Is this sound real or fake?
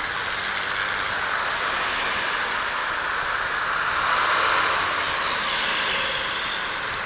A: real